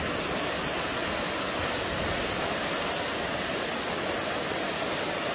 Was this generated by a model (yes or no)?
no